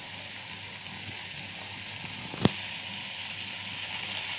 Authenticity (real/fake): real